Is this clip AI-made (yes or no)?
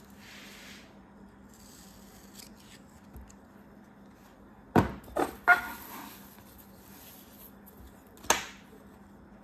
no